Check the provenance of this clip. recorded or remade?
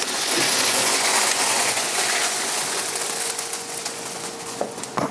remade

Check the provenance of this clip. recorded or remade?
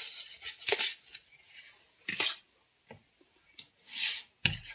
recorded